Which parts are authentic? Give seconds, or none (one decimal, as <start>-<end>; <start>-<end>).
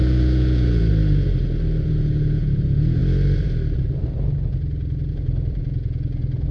0.9-1.9; 3.0-5.1